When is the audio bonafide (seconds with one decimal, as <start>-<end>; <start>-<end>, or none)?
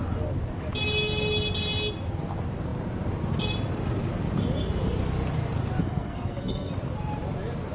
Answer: 0.0-5.8; 6.7-7.7